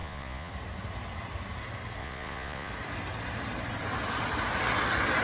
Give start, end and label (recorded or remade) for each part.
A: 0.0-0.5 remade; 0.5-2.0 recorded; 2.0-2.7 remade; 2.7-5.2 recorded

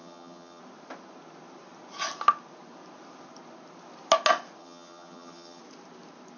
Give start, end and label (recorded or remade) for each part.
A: 0.0-0.6 remade; 0.6-4.6 recorded; 4.6-5.6 remade; 5.6-6.4 recorded

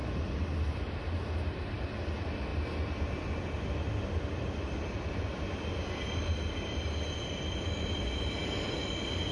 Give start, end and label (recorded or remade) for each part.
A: 0.0-9.3 recorded